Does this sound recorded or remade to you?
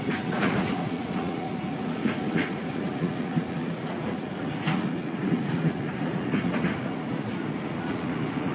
remade